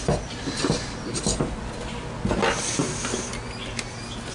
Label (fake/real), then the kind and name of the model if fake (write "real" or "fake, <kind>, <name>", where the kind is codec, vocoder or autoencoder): real